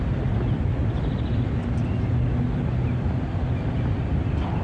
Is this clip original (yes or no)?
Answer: yes